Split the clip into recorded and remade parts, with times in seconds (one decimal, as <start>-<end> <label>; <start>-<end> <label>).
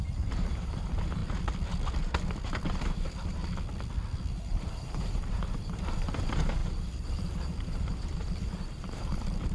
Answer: 0.0-1.2 remade; 1.2-2.7 recorded; 2.7-3.4 remade; 3.4-4.3 recorded; 4.3-9.5 remade